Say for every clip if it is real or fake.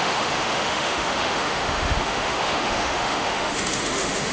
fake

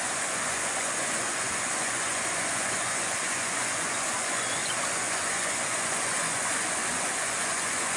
fake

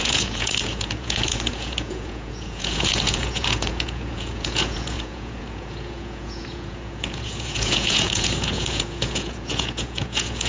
fake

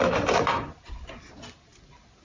real